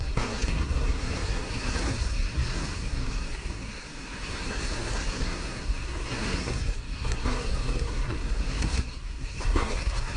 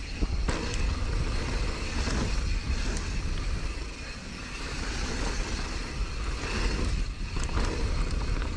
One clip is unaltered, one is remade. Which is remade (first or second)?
first